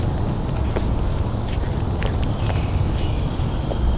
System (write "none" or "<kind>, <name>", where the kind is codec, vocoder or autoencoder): none